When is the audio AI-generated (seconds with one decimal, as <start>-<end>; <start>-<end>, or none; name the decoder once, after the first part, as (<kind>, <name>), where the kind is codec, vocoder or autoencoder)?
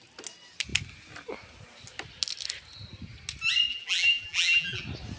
3.7-4.8 (vocoder, BigVGAN v2)